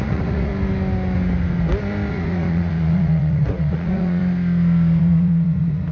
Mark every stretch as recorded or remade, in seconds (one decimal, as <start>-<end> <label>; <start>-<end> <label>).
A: 0.0-0.5 remade; 0.5-2.1 recorded; 2.1-4.2 remade; 4.2-5.0 recorded; 5.0-5.9 remade